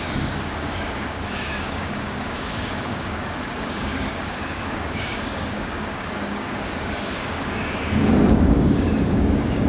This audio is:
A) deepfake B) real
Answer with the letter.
A